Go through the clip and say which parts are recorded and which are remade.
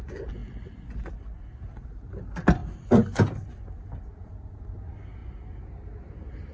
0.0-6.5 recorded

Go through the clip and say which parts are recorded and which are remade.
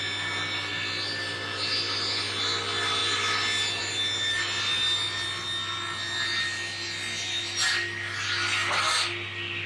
0.0-9.7 recorded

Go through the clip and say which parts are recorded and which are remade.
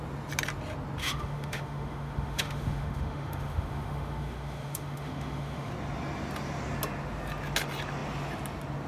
0.0-1.0 recorded; 1.0-5.7 remade; 5.7-8.9 recorded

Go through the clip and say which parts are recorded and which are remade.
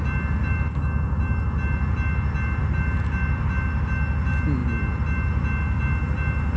0.0-6.6 recorded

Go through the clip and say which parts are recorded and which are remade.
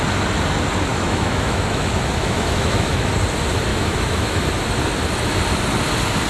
0.0-0.9 recorded; 0.9-3.1 remade; 3.1-3.7 recorded; 3.7-4.4 remade; 4.4-6.3 recorded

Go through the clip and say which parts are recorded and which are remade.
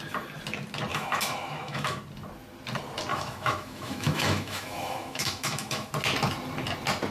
0.0-0.9 recorded; 0.9-2.0 remade; 2.0-3.1 recorded; 3.1-5.9 remade; 5.9-7.1 recorded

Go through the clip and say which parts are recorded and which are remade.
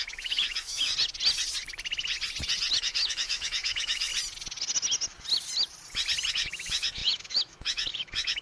0.0-0.9 remade; 0.9-2.8 recorded; 2.8-4.1 remade; 4.1-6.3 recorded; 6.3-8.4 remade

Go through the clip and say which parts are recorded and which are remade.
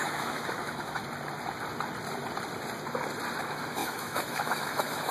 0.0-1.0 remade; 1.0-3.4 recorded; 3.4-5.1 remade